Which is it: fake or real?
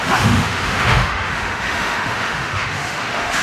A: fake